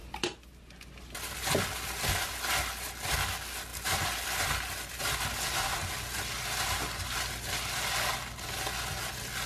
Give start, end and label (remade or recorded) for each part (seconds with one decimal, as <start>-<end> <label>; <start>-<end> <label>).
0.0-9.5 recorded